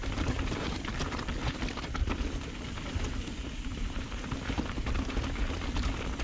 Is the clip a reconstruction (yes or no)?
yes